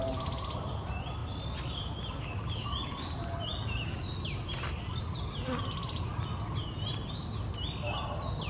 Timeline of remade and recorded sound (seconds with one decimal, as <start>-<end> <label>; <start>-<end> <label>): 0.0-8.5 recorded